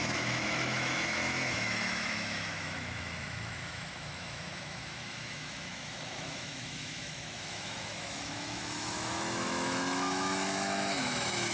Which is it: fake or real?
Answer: fake